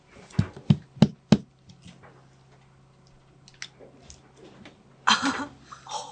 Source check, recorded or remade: recorded